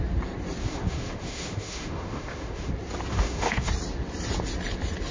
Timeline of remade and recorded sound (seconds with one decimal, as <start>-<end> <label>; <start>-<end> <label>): 0.0-0.6 recorded; 0.6-2.7 remade; 2.7-3.1 recorded; 3.1-3.7 remade; 3.7-5.1 recorded